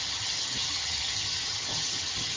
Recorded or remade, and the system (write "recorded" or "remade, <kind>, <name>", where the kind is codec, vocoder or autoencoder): remade, vocoder, HiFi-GAN